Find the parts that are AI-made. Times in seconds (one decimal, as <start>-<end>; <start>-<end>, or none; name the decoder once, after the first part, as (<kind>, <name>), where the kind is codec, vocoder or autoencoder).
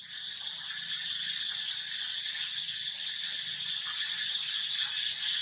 none